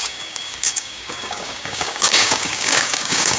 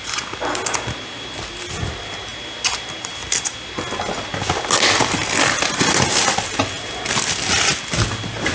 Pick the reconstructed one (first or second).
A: first